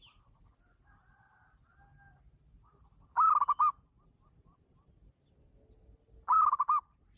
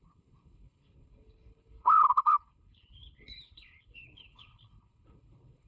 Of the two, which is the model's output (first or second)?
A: second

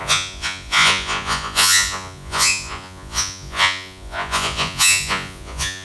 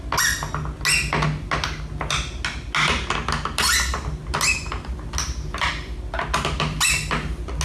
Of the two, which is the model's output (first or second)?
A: first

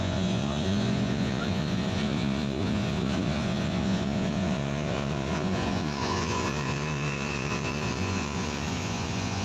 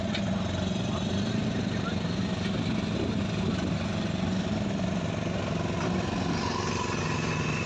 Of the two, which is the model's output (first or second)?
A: first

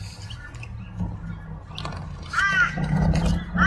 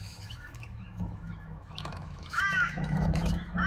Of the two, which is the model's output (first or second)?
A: second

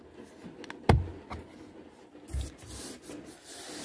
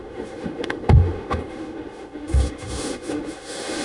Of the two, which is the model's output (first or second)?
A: second